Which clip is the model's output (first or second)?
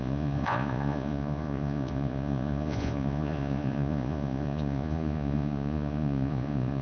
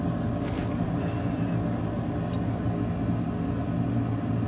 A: first